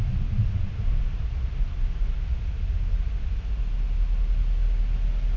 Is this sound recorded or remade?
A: recorded